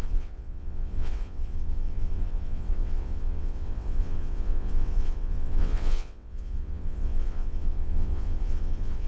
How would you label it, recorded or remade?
remade